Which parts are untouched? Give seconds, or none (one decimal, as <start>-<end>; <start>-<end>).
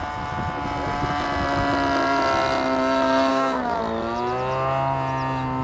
0.0-3.3; 3.8-5.6